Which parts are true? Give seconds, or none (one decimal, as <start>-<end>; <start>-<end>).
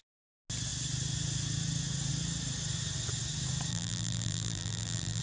0.0-3.7